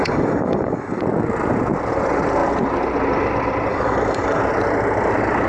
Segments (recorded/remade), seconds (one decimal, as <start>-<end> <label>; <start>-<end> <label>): 0.0-1.0 remade; 1.0-3.7 recorded; 3.7-4.4 remade; 4.4-5.5 recorded